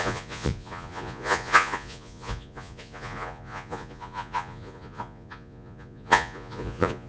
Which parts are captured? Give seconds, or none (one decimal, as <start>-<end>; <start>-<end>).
none